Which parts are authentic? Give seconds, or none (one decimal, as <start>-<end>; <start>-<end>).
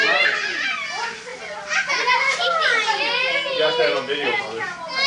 0.0-5.1